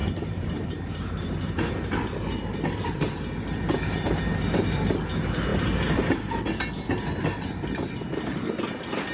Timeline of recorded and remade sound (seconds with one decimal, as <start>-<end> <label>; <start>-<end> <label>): 0.0-1.7 remade; 1.7-5.5 recorded; 5.5-6.6 remade; 6.6-9.1 recorded